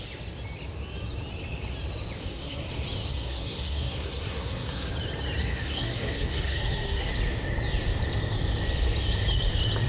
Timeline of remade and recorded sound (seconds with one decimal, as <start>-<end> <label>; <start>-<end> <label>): 0.0-2.2 recorded; 2.2-2.7 remade; 2.7-3.1 recorded; 3.1-4.9 remade; 4.9-5.4 recorded; 5.4-7.1 remade; 7.1-9.9 recorded